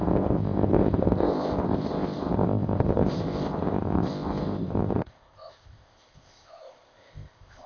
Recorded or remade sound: remade